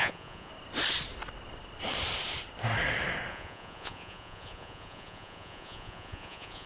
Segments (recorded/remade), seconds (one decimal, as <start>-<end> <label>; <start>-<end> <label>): 0.0-0.5 remade; 0.5-3.3 recorded; 3.3-6.7 remade